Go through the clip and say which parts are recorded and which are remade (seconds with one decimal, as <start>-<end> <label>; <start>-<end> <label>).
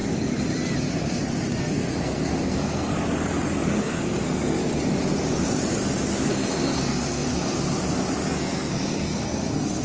0.0-1.6 recorded; 1.6-2.9 remade; 2.9-3.8 recorded; 3.8-4.6 remade; 4.6-6.3 recorded; 6.3-7.3 remade; 7.3-8.3 recorded; 8.3-9.8 remade